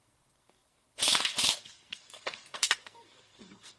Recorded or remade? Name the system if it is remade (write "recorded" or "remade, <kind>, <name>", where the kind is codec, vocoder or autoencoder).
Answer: remade, codec, SNAC